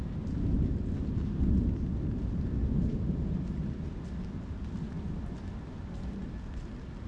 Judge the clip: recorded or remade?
recorded